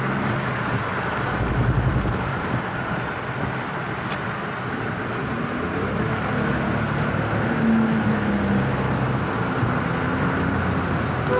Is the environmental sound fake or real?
real